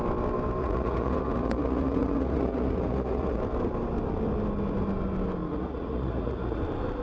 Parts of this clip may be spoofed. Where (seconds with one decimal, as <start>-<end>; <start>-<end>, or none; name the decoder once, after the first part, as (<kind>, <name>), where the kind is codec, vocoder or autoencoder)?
0.6-3.4 (vocoder, Vocos); 5.4-6.6